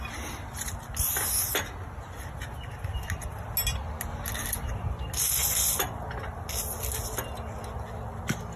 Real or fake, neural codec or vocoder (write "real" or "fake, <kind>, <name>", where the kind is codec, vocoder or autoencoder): real